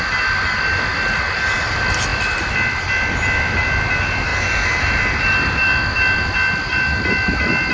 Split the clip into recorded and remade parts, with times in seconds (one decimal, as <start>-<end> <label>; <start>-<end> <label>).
0.0-7.7 recorded